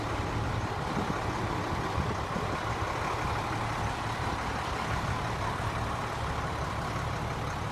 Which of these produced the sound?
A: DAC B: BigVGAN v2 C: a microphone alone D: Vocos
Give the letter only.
B